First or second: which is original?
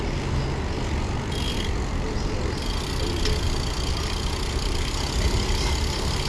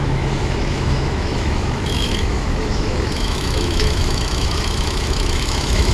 first